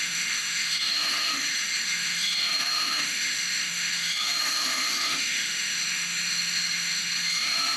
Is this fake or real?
fake